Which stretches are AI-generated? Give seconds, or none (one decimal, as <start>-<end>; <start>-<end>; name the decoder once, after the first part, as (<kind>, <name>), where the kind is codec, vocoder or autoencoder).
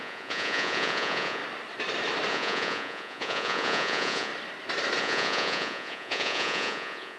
0.0-1.4 (vocoder, Vocos); 2.3-4.3; 5.0-7.2